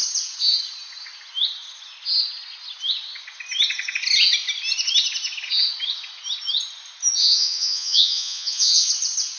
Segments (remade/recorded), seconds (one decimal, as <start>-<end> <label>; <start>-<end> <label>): 0.0-7.2 recorded; 7.2-8.9 remade; 8.9-9.4 recorded